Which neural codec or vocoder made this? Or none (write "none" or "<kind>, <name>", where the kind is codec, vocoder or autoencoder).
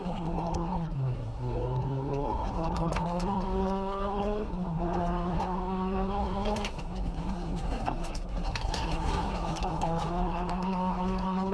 codec, SNAC